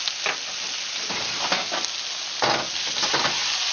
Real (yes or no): yes